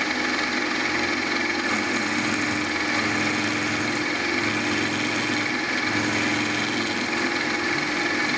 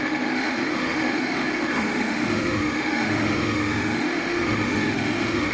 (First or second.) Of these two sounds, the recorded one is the first